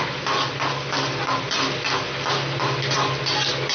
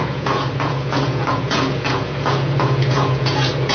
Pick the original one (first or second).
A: first